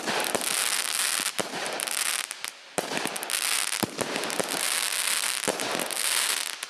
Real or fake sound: real